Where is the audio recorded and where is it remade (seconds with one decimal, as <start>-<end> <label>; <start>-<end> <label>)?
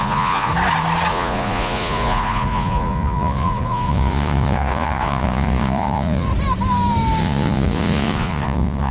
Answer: 0.0-0.5 remade; 0.5-1.1 recorded; 1.1-6.3 remade; 6.3-7.2 recorded; 7.2-8.9 remade